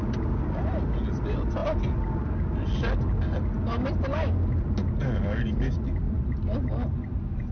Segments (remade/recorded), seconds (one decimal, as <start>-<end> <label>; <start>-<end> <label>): 0.0-7.5 recorded